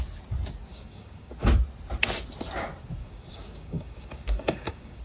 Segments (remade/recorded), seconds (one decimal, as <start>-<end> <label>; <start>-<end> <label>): 0.0-0.7 recorded; 0.7-1.3 remade; 1.3-3.0 recorded; 3.0-5.0 remade